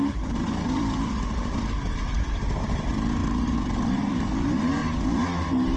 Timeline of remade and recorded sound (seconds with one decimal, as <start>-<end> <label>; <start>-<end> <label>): 0.0-4.8 remade; 4.8-5.8 recorded